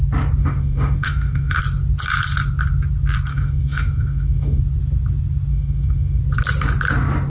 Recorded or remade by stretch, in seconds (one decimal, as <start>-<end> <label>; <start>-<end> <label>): 0.0-0.4 recorded; 0.4-1.6 remade; 1.6-3.3 recorded; 3.3-4.6 remade; 4.6-5.5 recorded; 5.5-6.2 remade; 6.2-7.3 recorded